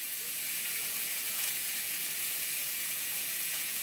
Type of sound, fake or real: fake